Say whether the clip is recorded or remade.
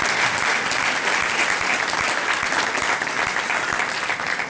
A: recorded